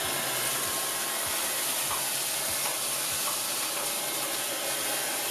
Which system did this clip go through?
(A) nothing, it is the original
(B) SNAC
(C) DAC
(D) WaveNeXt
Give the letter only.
A